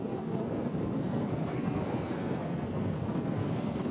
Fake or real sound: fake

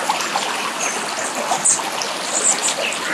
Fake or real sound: real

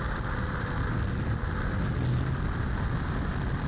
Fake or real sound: real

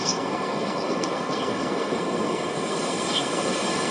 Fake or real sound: fake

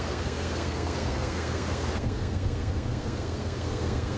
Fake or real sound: fake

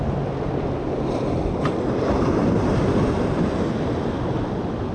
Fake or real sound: real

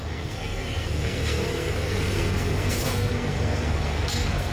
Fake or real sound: fake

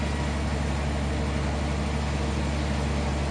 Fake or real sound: real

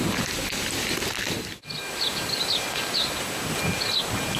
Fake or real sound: real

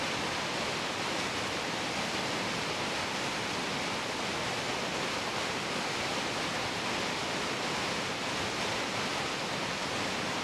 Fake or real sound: real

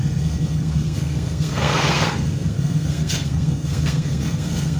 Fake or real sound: fake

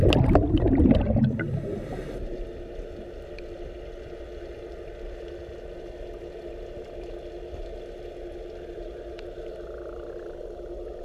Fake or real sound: real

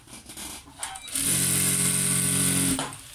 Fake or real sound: real